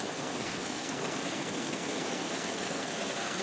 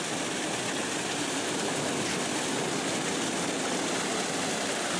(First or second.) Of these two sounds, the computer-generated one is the first